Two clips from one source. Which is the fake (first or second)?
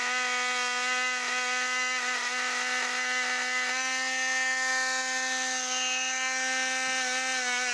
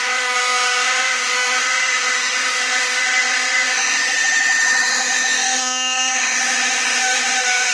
second